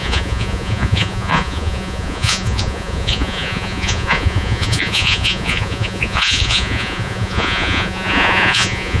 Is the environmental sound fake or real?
fake